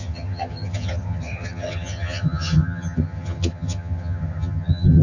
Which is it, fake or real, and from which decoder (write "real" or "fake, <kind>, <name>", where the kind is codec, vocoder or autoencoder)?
fake, vocoder, HiFi-GAN